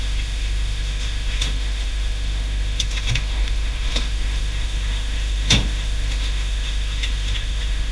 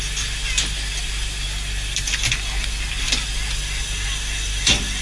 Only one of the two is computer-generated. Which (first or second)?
first